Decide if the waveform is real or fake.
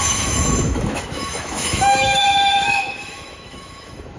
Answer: fake